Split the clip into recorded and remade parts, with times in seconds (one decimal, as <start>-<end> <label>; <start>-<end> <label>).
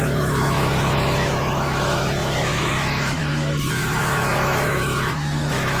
0.0-5.8 remade